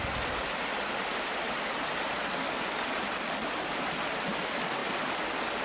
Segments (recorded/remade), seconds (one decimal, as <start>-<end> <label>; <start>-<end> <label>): 0.0-5.6 recorded